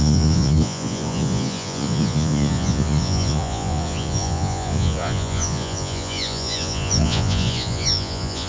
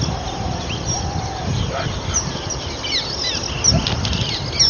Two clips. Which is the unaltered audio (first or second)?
second